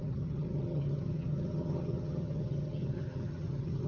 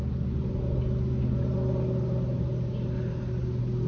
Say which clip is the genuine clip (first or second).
second